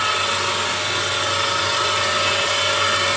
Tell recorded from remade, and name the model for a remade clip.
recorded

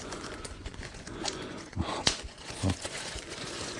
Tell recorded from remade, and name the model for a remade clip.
remade, vocoder, Vocos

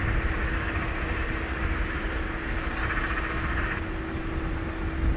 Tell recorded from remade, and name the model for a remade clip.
recorded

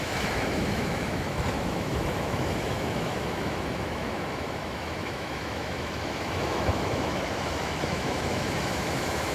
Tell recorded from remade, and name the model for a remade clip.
remade, autoencoder, DAC-VAE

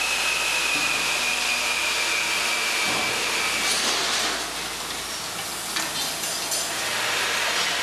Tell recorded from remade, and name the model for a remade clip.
recorded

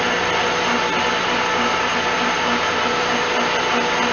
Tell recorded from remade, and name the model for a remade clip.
recorded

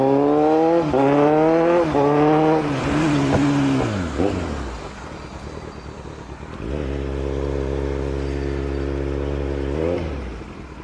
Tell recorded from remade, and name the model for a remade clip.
recorded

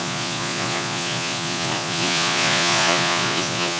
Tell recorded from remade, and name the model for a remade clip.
remade, vocoder, Vocos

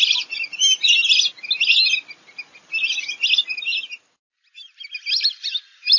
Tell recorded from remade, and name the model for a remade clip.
recorded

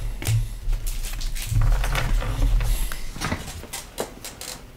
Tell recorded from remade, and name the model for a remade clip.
recorded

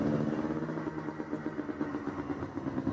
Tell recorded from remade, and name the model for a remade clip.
recorded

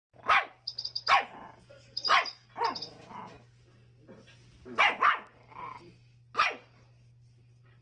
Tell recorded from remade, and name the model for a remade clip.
recorded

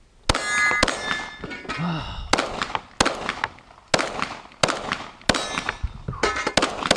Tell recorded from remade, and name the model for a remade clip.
recorded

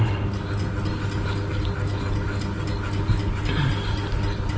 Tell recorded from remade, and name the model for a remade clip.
recorded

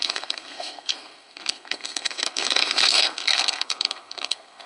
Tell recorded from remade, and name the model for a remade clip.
remade, codec, SNAC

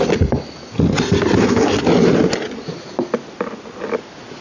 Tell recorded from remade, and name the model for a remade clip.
recorded